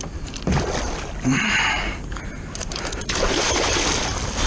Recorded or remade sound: recorded